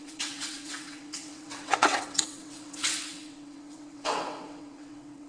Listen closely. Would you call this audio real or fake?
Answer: fake